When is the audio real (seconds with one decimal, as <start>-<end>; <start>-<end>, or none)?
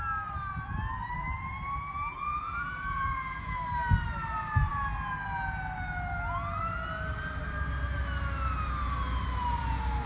0.0-2.3; 3.6-10.1